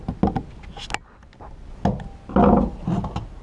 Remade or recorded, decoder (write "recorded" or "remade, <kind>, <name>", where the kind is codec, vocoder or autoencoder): recorded